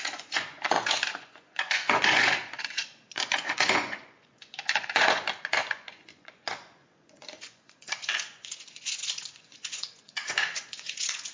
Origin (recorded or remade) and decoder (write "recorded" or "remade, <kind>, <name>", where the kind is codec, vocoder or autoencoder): remade, vocoder, Vocos